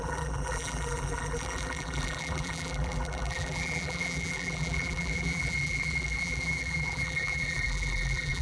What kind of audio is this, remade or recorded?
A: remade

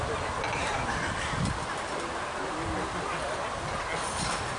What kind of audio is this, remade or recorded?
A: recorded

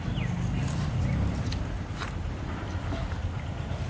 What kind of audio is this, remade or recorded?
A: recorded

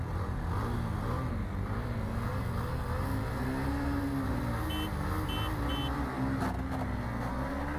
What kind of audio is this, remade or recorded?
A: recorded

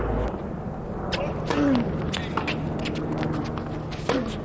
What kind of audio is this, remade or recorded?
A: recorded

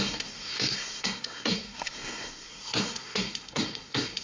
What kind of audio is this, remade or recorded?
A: remade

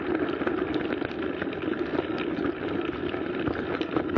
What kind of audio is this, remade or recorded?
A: recorded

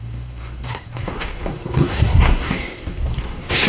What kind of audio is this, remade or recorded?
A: remade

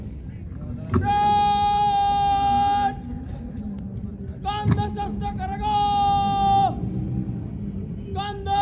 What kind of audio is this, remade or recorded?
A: recorded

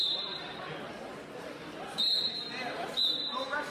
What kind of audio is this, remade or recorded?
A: recorded